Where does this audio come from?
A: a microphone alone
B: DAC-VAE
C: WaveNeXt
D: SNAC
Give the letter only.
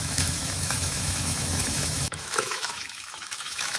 B